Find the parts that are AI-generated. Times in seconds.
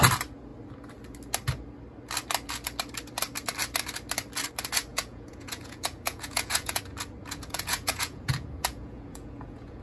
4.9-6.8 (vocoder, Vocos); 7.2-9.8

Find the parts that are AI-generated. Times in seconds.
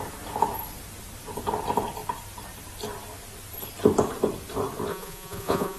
4.9-5.8 (vocoder, Vocos)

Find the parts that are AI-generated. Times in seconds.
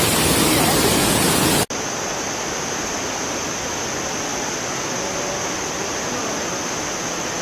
1.0-1.6 (vocoder, Vocos)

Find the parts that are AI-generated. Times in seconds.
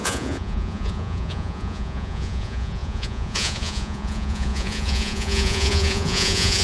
0.0-6.6 (vocoder, Vocos)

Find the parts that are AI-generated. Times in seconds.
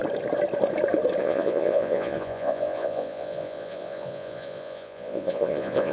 1.2-5.9 (vocoder, Vocos)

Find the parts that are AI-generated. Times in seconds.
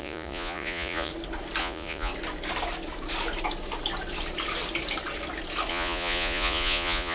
0.0-1.1 (vocoder, Vocos); 1.6-2.1; 5.7-7.1